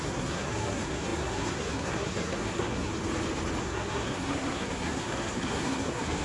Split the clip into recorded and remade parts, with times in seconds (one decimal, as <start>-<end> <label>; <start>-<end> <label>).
0.0-2.9 remade; 2.9-3.6 recorded; 3.6-6.2 remade